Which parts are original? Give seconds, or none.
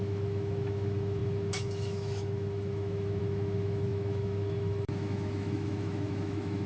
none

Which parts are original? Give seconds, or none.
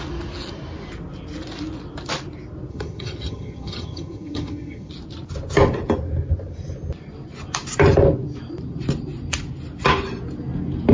0.0-2.7; 4.9-10.9